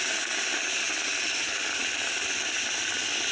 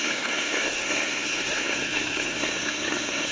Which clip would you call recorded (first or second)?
first